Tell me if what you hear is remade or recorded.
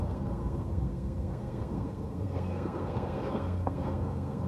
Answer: remade